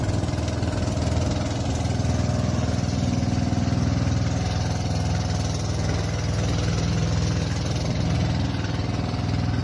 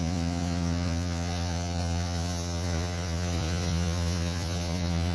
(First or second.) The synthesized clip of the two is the second